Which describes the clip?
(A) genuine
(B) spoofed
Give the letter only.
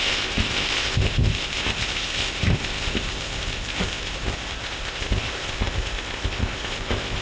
B